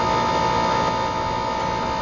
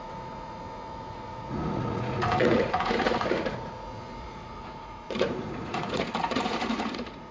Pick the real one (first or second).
first